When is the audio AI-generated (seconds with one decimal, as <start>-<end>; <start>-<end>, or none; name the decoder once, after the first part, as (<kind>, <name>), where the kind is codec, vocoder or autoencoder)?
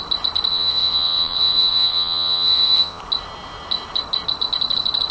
0.5-3.0 (vocoder, WaveNeXt)